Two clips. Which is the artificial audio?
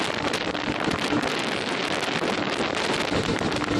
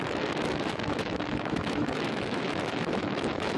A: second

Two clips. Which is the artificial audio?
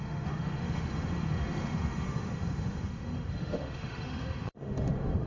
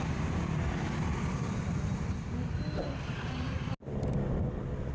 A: first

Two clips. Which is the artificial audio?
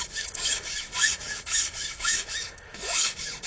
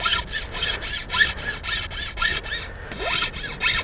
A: first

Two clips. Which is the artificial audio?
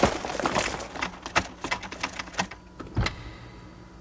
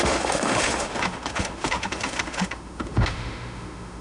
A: second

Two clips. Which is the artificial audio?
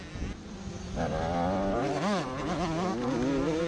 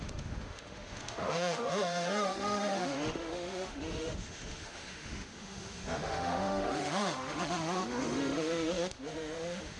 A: second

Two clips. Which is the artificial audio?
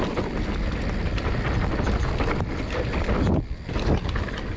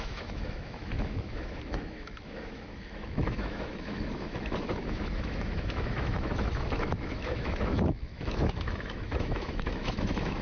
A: second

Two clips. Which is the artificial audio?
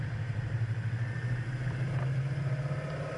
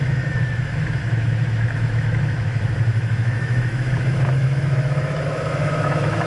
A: second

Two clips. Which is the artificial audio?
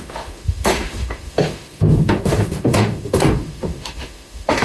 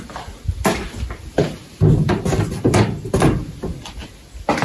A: first